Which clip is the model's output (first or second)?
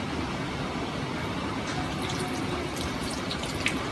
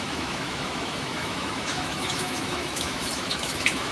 second